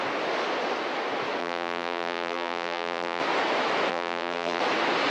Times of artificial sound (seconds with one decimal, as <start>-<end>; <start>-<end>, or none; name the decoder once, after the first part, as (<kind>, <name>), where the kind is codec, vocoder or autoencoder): 1.4-3.2 (vocoder, BigVGAN v2); 3.9-4.6